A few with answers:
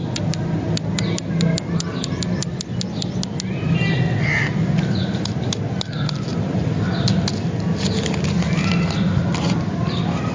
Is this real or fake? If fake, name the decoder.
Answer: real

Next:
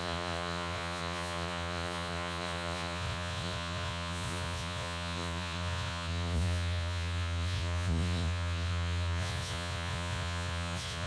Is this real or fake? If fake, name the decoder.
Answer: fake, vocoder, Vocos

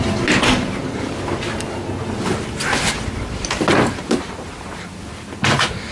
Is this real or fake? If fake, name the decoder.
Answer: real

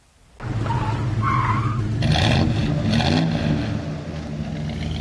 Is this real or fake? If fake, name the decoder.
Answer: real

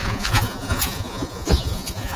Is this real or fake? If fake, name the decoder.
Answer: fake, vocoder, Vocos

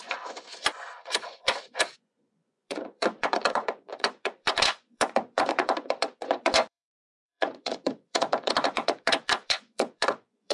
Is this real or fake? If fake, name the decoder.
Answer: fake, vocoder, Vocos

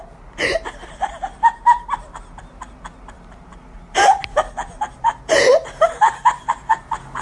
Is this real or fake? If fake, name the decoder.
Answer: real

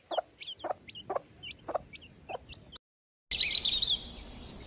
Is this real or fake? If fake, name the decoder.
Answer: real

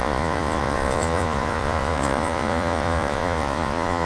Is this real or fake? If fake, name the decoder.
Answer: fake, vocoder, Vocos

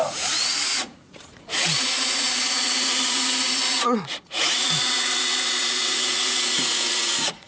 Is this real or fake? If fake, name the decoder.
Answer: fake, vocoder, Vocos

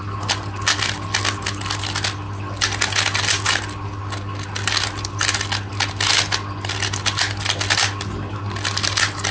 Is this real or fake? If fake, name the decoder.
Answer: real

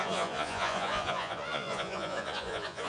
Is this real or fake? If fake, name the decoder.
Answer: fake, vocoder, Vocos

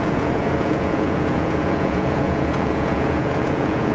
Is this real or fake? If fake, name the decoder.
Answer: fake, vocoder, Vocos